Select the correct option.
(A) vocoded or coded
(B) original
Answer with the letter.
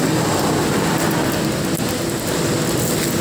B